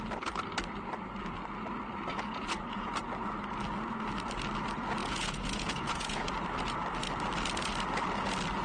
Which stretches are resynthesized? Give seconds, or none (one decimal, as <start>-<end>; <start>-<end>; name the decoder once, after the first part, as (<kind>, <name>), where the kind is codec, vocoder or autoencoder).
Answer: 2.1-2.9 (vocoder, Vocos); 5.0-6.3